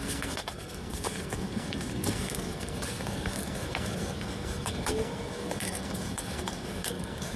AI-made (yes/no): yes